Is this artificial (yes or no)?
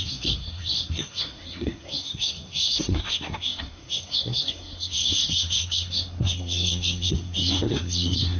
yes